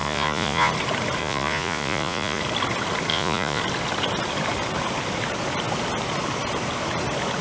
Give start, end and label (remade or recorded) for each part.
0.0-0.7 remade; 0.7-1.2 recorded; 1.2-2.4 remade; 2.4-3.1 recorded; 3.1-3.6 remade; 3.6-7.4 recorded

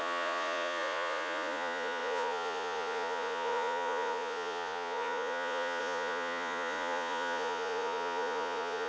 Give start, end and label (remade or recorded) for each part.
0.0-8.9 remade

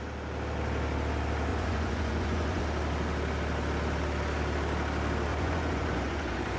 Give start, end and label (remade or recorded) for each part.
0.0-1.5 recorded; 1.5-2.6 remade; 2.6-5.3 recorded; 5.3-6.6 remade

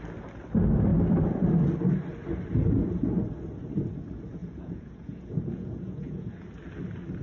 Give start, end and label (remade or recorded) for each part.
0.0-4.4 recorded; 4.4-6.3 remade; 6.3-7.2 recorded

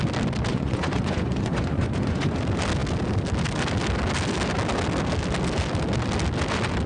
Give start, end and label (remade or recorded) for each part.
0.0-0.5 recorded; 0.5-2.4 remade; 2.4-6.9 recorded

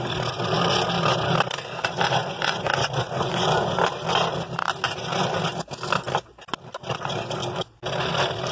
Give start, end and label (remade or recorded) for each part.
0.0-2.2 recorded; 2.2-3.7 remade; 3.7-8.5 recorded

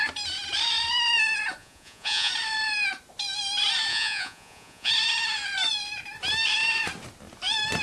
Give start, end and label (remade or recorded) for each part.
0.0-1.6 recorded; 1.6-2.3 remade; 2.3-3.9 recorded; 3.9-4.9 remade; 4.9-7.8 recorded

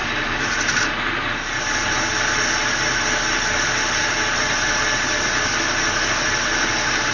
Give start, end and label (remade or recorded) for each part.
0.0-7.1 recorded